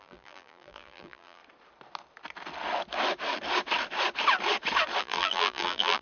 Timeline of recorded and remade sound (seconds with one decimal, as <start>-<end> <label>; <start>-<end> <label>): 0.0-1.4 remade; 1.4-5.0 recorded; 5.0-6.0 remade